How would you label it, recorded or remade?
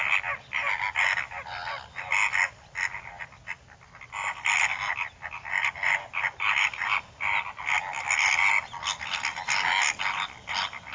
recorded